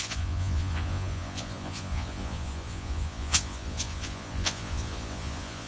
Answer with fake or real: fake